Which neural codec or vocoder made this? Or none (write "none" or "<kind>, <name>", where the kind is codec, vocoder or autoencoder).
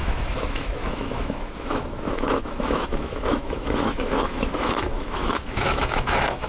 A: autoencoder, DAC-VAE